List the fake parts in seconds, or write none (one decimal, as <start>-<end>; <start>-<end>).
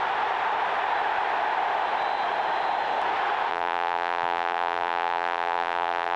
3.5-6.2